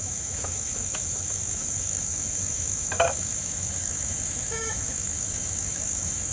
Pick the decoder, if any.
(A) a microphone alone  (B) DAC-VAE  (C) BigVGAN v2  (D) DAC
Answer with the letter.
B